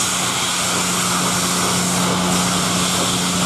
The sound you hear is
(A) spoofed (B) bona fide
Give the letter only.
B